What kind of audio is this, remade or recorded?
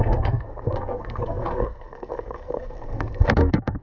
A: remade